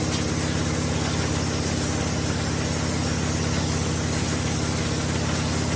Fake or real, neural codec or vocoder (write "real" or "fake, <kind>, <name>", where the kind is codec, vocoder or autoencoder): real